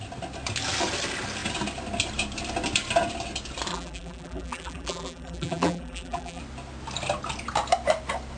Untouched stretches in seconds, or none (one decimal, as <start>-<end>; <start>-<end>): 0.0-3.7; 6.4-8.4